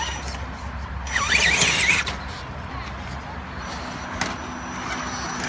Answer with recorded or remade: recorded